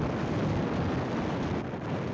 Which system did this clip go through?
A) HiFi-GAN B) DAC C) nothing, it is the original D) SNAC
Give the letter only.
C